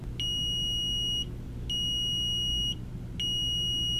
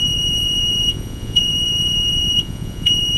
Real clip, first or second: first